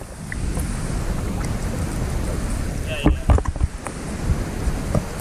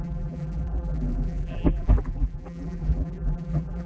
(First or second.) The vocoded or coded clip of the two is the second